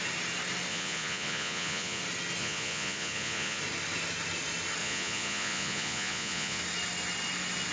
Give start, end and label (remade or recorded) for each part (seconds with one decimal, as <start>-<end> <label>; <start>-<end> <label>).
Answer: 0.0-0.7 recorded; 0.7-2.0 remade; 2.0-2.4 recorded; 2.4-3.6 remade; 3.6-4.8 recorded; 4.8-6.6 remade; 6.6-7.7 recorded